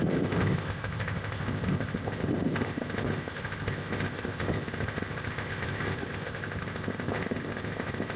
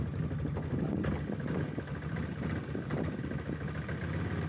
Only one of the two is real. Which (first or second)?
second